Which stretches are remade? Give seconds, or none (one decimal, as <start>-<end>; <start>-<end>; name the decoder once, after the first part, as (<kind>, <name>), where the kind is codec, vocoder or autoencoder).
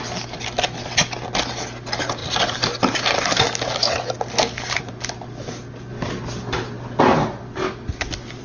none